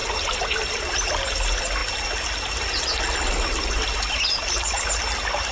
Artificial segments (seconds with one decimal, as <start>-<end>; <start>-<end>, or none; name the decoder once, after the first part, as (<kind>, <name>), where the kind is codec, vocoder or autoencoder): none